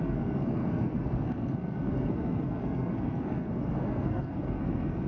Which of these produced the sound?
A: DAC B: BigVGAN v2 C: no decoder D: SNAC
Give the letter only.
D